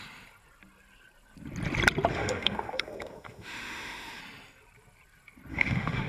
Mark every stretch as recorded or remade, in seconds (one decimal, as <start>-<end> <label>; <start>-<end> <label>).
0.0-2.1 recorded; 2.1-4.2 remade; 4.2-5.5 recorded; 5.5-6.1 remade